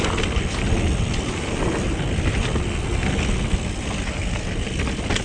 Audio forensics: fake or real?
real